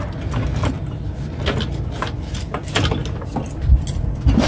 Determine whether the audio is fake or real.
real